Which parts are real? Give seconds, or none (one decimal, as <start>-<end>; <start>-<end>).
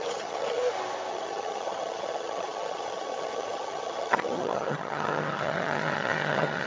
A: 0.6-1.1